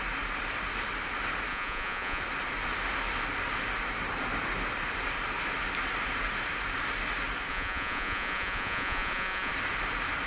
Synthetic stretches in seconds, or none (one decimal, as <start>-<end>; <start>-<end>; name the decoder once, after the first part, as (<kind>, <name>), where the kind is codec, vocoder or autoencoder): 1.5-2.2 (vocoder, Vocos); 7.5-9.5